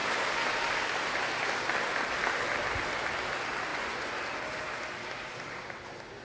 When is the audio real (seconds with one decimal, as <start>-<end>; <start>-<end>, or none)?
0.0-3.7; 4.2-6.2